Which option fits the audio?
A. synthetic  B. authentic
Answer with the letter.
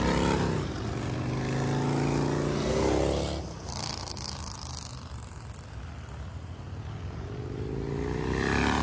B